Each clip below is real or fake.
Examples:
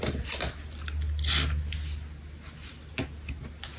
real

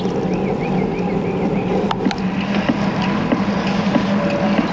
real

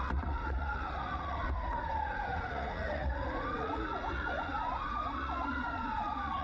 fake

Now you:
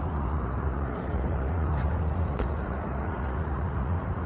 fake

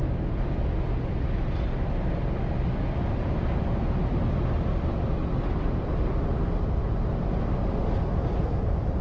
real